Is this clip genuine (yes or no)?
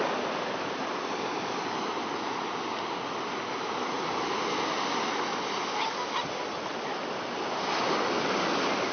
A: yes